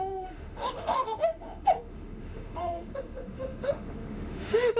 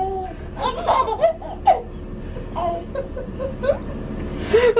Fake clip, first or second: first